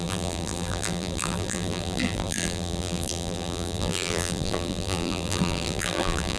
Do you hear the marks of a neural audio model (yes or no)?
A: yes